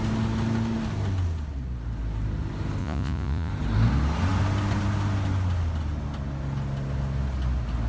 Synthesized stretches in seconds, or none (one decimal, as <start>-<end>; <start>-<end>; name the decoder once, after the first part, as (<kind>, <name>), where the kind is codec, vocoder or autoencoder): 2.8-3.5 (vocoder, Vocos)